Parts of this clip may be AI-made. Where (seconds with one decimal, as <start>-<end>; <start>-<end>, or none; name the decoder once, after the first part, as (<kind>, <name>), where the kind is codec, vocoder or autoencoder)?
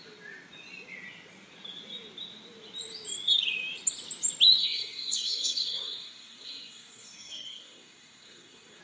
4.6-8.8 (codec, SNAC)